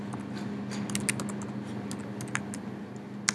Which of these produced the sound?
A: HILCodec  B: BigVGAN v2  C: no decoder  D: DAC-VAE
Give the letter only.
C